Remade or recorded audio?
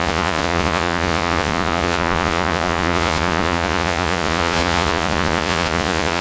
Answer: remade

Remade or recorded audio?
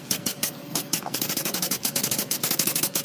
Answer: remade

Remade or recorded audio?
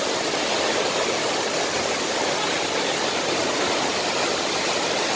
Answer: recorded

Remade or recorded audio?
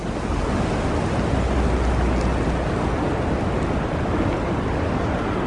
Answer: recorded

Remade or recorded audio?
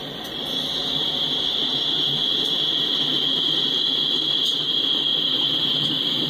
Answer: recorded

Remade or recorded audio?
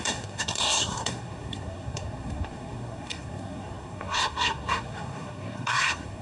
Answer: remade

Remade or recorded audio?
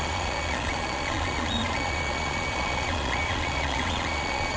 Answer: remade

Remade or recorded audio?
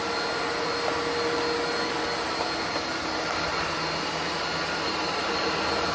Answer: recorded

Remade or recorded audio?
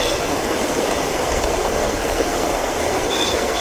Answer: remade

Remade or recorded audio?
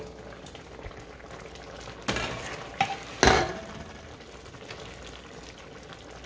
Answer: recorded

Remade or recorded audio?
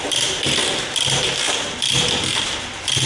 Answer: recorded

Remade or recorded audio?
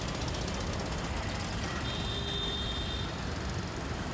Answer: recorded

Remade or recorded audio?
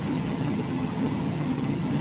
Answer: remade